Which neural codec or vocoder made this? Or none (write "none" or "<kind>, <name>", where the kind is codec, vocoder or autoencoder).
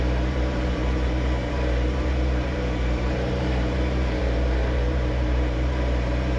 vocoder, BigVGAN v2